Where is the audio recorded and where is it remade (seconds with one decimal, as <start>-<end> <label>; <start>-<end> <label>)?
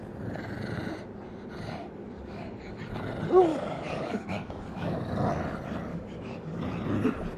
0.0-1.8 recorded; 1.8-2.8 remade; 2.8-3.5 recorded; 3.5-5.3 remade; 5.3-5.9 recorded; 5.9-6.6 remade; 6.6-7.4 recorded